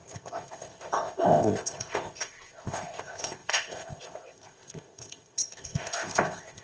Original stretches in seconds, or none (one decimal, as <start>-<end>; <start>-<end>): none